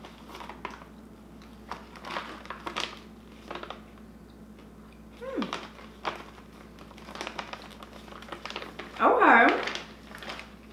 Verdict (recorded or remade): recorded